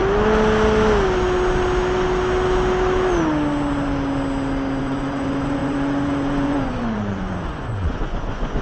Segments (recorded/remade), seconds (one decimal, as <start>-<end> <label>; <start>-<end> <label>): 0.0-4.8 recorded; 4.8-8.6 remade